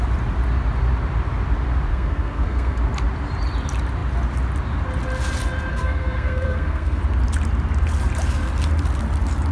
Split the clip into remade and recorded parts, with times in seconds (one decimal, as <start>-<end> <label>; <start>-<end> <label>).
0.0-1.9 recorded; 1.9-2.8 remade; 2.8-5.7 recorded; 5.7-7.0 remade; 7.0-9.5 recorded